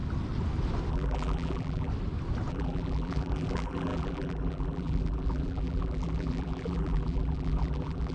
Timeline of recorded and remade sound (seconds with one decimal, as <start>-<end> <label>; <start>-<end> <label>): 0.0-0.9 recorded; 0.9-1.9 remade; 1.9-2.5 recorded; 2.5-8.1 remade